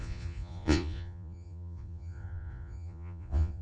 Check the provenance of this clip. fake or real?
fake